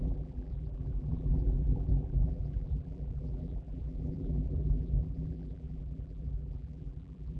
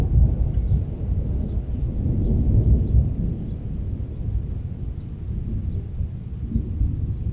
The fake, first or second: first